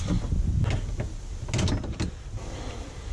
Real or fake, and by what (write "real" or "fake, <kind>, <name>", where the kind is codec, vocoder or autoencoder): real